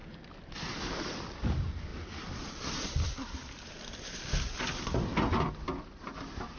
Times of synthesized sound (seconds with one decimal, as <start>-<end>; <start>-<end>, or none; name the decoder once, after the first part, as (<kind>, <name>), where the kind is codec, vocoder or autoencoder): 0.0-1.1 (vocoder, BigVGAN v2); 1.9-5.5